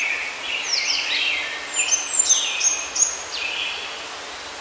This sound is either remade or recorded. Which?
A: recorded